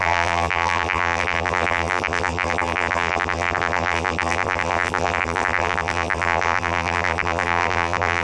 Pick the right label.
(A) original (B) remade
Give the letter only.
B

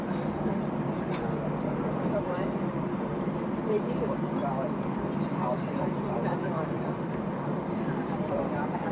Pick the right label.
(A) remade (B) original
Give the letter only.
A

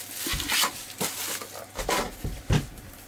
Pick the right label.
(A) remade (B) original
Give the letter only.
B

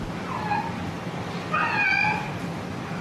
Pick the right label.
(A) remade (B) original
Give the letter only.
B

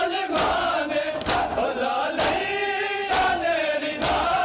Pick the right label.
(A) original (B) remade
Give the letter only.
A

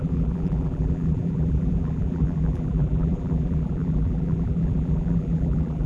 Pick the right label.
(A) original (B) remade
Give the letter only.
B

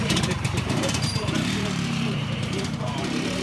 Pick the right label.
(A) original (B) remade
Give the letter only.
B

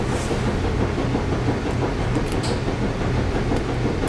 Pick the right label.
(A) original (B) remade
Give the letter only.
A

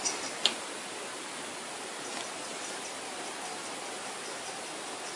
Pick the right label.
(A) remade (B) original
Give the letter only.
B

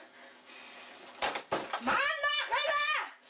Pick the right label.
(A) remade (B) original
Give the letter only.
B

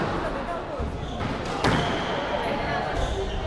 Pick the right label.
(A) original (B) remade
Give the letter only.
A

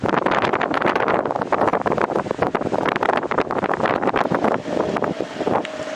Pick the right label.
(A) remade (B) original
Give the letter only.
B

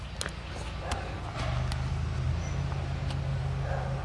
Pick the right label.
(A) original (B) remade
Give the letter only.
A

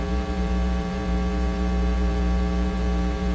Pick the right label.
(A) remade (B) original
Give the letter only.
A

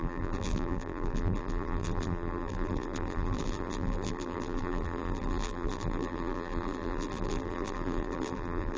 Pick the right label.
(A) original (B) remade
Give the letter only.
B